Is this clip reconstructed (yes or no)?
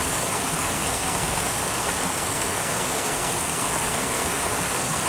yes